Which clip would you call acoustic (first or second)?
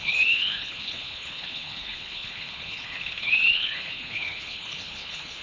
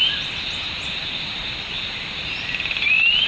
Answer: second